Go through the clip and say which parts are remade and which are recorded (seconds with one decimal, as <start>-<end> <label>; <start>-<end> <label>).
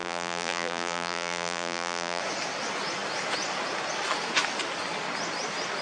0.0-2.2 remade; 2.2-5.8 recorded